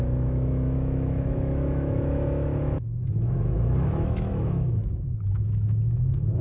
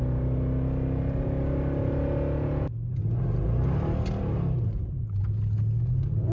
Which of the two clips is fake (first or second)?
first